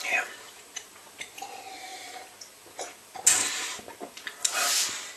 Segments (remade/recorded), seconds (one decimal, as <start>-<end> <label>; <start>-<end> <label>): 0.0-5.2 recorded